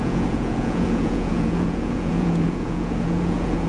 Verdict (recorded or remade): remade